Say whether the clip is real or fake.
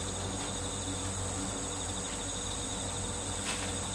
real